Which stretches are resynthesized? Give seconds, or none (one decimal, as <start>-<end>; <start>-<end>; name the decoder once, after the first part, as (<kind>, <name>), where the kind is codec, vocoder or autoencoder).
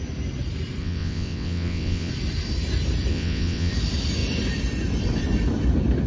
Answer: 0.8-2.1 (vocoder, WaveNeXt); 3.1-3.7